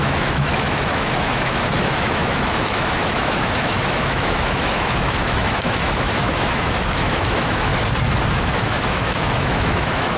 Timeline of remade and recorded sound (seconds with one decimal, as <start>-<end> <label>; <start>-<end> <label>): 0.0-7.7 remade; 7.7-8.3 recorded; 8.3-10.2 remade